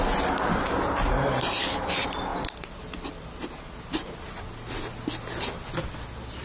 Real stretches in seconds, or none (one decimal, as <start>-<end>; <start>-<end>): 0.0-6.4